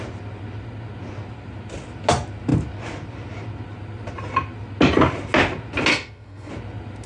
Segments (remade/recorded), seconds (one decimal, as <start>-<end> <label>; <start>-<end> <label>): 0.0-5.9 recorded; 5.9-6.5 remade; 6.5-7.1 recorded